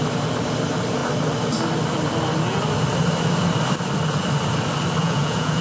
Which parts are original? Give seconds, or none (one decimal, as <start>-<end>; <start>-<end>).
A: 0.0-5.0